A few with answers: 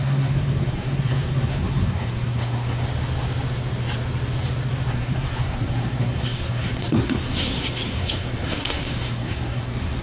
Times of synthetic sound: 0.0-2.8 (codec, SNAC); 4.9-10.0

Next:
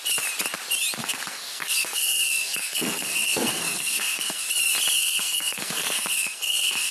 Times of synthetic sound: 1.0-4.5 (codec, SNAC); 5.0-6.9

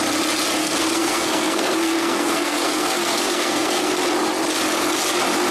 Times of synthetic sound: 0.6-3.9 (codec, SNAC)